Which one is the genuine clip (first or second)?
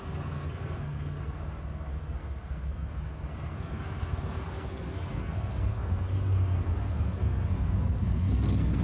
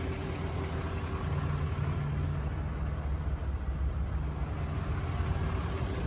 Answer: second